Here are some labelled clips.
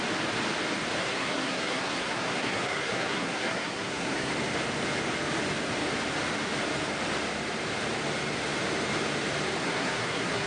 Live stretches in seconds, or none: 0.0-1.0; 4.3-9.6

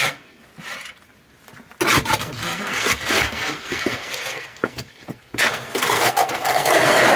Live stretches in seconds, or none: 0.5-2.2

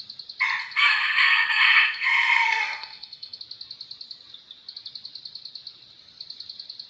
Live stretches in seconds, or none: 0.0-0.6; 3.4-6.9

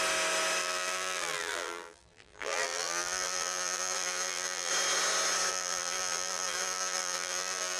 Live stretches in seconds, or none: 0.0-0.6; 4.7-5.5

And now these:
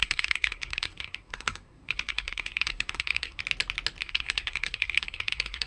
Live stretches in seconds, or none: 3.4-4.0